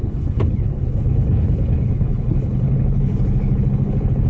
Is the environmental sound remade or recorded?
remade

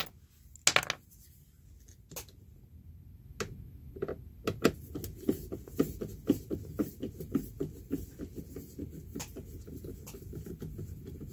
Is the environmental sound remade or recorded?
recorded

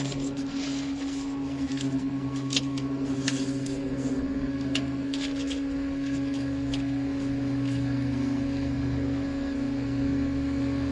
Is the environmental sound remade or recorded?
remade